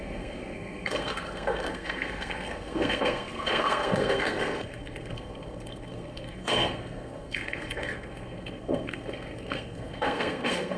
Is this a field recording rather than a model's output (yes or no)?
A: no